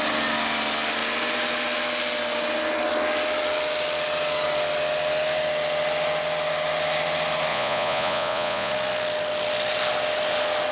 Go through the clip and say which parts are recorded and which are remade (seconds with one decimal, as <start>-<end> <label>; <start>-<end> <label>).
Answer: 0.0-7.5 recorded; 7.5-8.7 remade; 8.7-10.7 recorded